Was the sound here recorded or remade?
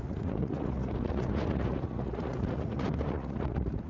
remade